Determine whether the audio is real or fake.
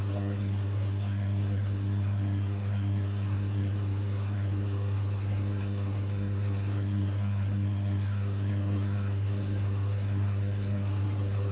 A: fake